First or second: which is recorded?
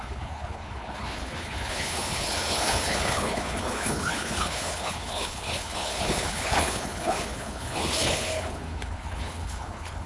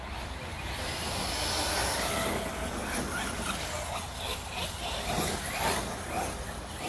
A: second